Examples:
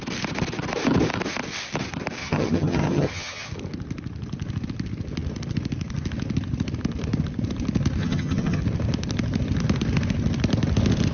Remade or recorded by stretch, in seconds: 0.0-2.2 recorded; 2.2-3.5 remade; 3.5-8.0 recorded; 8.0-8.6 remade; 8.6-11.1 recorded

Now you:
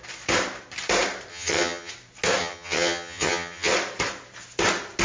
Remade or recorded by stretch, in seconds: 0.0-1.3 recorded; 1.3-1.9 remade; 1.9-2.4 recorded; 2.4-3.7 remade; 3.7-5.0 recorded

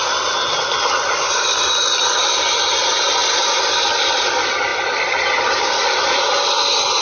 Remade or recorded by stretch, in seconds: 0.0-7.0 recorded

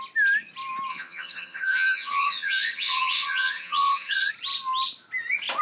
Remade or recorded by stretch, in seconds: 0.0-0.9 recorded; 0.9-4.3 remade; 4.3-5.6 recorded

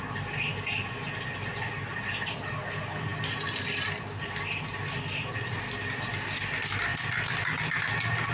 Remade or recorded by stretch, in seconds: 0.0-8.3 recorded

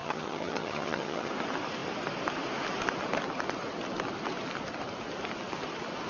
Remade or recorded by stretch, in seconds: 0.0-1.3 remade; 1.3-6.1 recorded

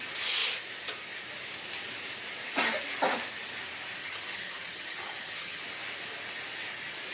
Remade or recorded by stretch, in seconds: 0.0-4.0 recorded; 4.0-5.6 remade; 5.6-7.1 recorded

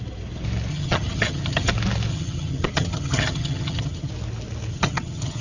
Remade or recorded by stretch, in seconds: 0.0-0.7 recorded; 0.7-1.7 remade; 1.7-2.1 recorded; 2.1-4.1 remade; 4.1-4.7 recorded; 4.7-5.4 remade